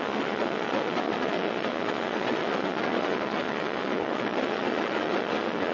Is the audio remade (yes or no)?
yes